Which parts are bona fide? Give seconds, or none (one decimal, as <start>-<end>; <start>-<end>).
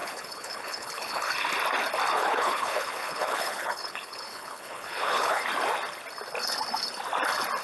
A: 1.3-2.1; 5.4-7.6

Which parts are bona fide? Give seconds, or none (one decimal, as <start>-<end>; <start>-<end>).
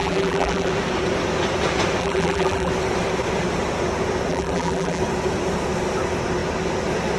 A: 0.7-2.0; 2.7-4.3; 5.0-7.2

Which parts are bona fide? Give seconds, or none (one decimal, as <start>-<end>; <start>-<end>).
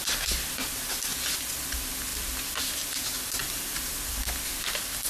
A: 0.0-1.1; 1.7-3.4; 4.2-5.1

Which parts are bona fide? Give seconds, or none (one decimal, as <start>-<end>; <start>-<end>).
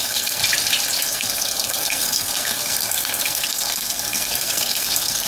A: 0.4-1.0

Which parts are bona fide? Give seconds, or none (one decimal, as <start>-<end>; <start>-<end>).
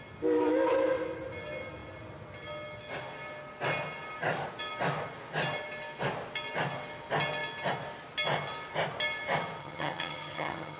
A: 0.0-9.6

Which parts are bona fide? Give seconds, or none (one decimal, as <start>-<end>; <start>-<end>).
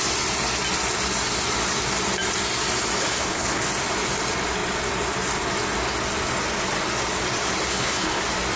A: 0.0-3.0; 3.7-7.7; 8.2-8.6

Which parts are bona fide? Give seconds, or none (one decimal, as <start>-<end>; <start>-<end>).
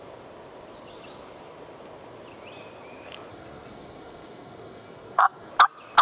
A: 0.0-3.3; 5.5-6.0